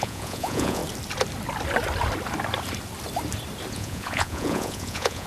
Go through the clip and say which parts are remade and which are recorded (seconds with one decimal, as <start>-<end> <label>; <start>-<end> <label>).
0.0-0.8 remade; 0.8-3.7 recorded; 3.7-5.3 remade